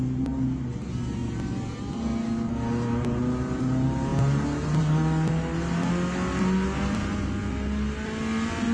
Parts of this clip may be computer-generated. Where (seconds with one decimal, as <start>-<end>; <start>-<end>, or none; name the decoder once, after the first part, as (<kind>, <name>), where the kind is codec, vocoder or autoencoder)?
none